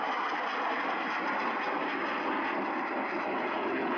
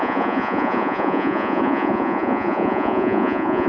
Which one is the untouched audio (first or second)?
first